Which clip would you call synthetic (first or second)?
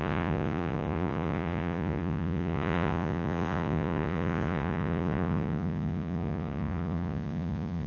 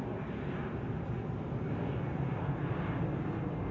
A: first